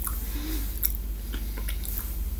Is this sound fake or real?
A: real